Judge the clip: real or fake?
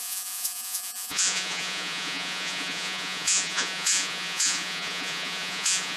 fake